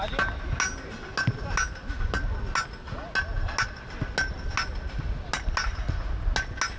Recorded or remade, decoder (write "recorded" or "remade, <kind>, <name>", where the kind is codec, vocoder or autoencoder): recorded